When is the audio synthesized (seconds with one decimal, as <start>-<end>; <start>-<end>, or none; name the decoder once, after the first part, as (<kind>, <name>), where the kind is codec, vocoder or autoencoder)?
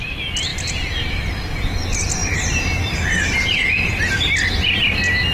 none